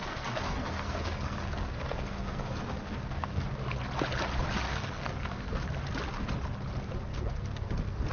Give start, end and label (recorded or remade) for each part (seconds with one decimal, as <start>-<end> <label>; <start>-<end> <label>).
0.0-3.4 remade; 3.4-4.7 recorded; 4.7-5.6 remade; 5.6-7.1 recorded; 7.1-8.1 remade